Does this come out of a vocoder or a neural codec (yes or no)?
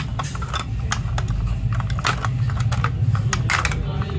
no